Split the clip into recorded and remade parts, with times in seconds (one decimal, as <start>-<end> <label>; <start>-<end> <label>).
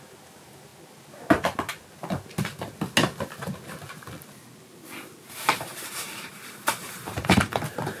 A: 0.0-0.7 remade; 0.7-5.3 recorded; 5.3-8.0 remade